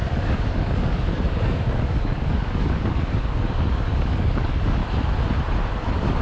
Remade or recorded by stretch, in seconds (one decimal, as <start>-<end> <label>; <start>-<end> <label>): 0.0-4.8 remade; 4.8-5.7 recorded; 5.7-6.2 remade